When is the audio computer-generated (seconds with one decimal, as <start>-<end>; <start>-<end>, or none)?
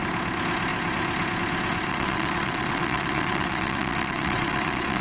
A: 1.9-5.0